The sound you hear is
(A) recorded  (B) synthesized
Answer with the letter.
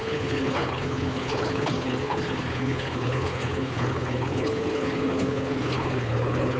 B